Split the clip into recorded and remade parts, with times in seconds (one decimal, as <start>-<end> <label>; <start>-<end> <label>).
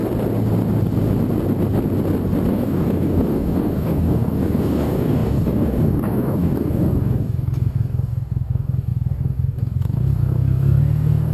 0.0-2.5 recorded; 2.5-11.3 remade